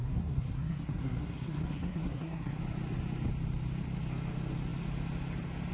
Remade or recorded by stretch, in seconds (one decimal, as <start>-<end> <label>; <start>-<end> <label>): 0.0-2.6 remade; 2.6-5.7 recorded